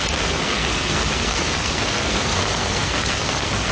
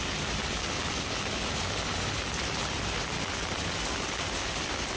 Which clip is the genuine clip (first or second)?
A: second